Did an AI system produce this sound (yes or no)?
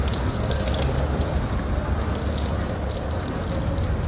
no